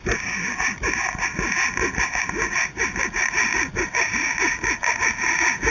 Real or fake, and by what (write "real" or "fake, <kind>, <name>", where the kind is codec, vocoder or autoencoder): real